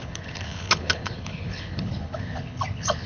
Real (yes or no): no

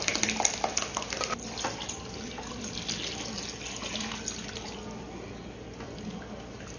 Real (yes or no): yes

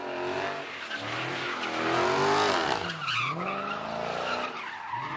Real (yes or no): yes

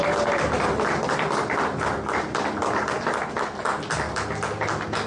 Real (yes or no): yes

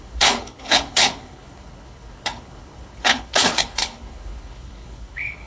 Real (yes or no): no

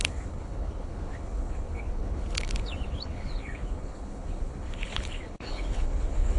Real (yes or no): no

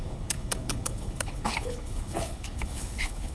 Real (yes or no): no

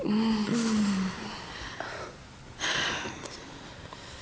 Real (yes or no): yes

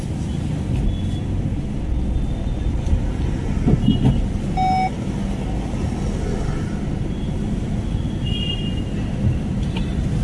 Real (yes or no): yes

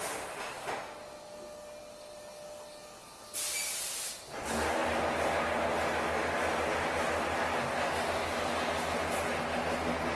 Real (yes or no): yes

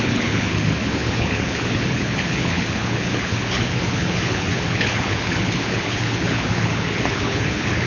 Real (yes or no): no